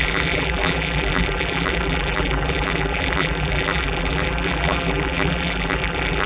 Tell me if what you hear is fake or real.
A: fake